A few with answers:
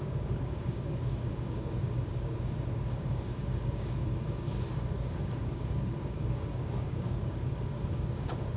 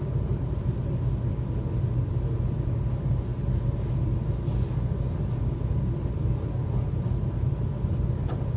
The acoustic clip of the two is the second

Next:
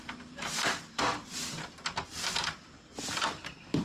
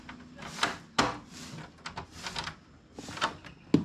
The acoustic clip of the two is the second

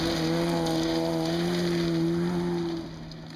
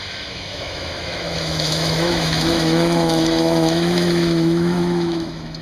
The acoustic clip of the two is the first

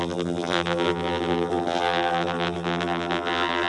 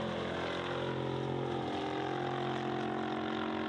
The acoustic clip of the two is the second